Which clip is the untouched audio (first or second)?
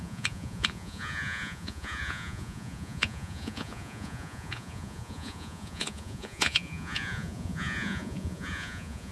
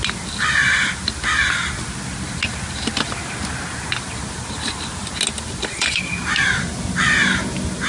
second